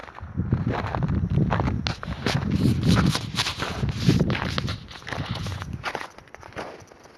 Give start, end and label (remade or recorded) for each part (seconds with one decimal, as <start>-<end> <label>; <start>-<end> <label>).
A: 0.0-5.5 recorded; 5.5-6.7 remade; 6.7-7.2 recorded